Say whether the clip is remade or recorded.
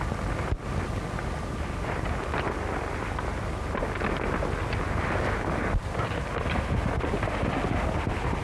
recorded